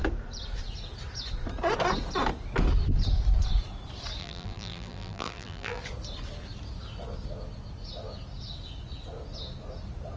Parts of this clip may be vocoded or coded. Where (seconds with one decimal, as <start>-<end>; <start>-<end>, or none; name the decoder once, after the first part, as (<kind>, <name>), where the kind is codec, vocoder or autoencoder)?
4.2-5.8 (vocoder, BigVGAN v2)